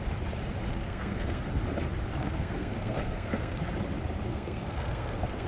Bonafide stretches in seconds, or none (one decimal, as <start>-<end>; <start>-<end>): 0.0-0.7; 1.4-2.2; 3.6-4.3